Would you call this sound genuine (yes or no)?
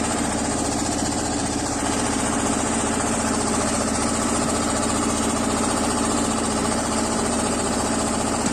no